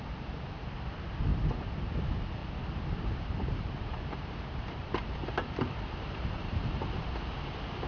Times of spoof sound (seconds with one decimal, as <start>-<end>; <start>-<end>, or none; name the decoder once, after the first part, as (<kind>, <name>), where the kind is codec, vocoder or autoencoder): 1.3-1.9 (vocoder, BigVGAN v2); 2.4-7.1